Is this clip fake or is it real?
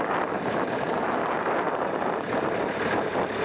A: real